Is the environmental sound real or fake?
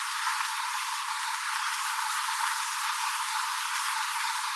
fake